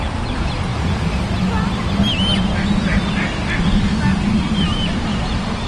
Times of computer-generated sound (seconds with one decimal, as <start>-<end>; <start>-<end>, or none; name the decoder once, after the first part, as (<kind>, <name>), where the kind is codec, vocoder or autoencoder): 4.1-5.7 (vocoder, BigVGAN v2)